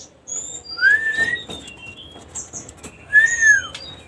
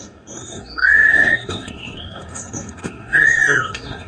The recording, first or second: first